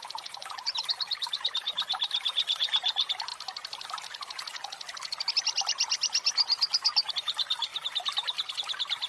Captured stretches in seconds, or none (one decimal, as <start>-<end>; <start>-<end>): 3.3-7.1